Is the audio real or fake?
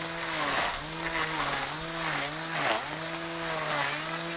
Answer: real